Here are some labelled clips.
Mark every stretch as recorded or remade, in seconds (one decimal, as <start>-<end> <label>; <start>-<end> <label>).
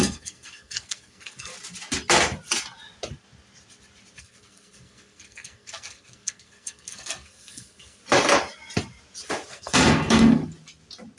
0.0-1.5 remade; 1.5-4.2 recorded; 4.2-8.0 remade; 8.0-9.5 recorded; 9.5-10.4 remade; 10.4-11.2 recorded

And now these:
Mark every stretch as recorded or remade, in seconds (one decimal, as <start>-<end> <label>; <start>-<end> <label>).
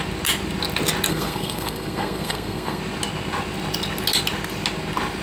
0.0-1.1 recorded; 1.1-2.8 remade; 2.8-5.2 recorded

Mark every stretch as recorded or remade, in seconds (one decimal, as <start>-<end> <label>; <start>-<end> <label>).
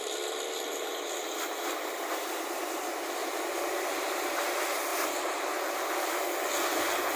0.0-3.2 recorded; 3.2-4.3 remade; 4.3-7.2 recorded